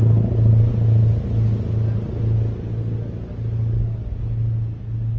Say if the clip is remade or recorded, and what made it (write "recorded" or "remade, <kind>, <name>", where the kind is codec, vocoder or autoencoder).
recorded